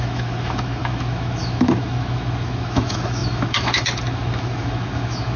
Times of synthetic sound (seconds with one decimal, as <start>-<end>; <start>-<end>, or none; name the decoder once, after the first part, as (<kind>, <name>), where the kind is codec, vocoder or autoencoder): 0.0-5.4 (autoencoder, DAC-VAE)